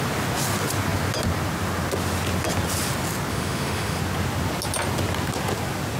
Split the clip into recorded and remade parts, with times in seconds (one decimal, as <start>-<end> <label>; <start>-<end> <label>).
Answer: 0.0-3.3 recorded; 3.3-4.0 remade; 4.0-6.0 recorded